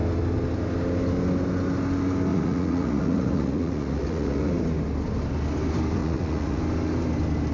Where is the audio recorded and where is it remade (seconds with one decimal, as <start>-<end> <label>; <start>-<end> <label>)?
0.0-2.3 recorded; 2.3-4.5 remade; 4.5-6.0 recorded; 6.0-6.6 remade; 6.6-7.5 recorded